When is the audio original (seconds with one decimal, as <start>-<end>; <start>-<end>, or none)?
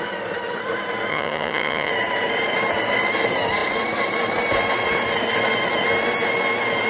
0.0-1.1; 1.9-6.9